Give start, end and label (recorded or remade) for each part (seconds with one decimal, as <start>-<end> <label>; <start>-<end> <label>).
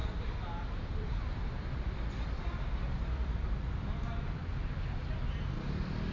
0.0-6.1 recorded